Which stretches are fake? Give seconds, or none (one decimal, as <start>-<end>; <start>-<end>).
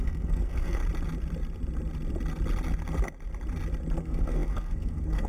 0.0-0.8; 4.0-5.3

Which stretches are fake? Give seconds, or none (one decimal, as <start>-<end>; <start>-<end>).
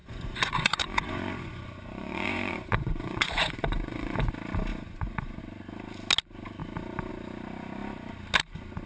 0.0-4.3; 4.7-5.4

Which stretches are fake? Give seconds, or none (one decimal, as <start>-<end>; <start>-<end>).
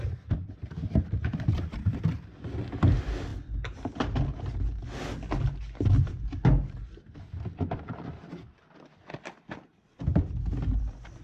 none